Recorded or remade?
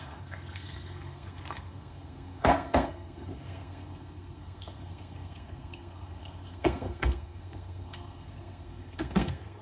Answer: remade